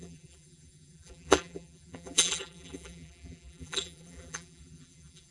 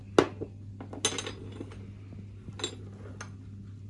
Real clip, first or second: second